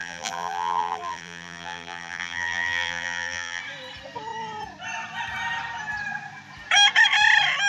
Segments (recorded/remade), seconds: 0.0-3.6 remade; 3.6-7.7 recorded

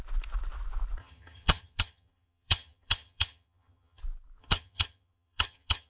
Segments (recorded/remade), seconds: 0.0-1.0 recorded; 1.0-4.0 remade; 4.0-4.4 recorded; 4.4-5.9 remade